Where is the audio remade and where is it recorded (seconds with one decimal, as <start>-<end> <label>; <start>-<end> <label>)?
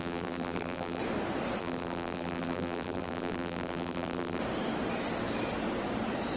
0.0-1.0 remade; 1.0-1.6 recorded; 1.6-4.4 remade; 4.4-6.4 recorded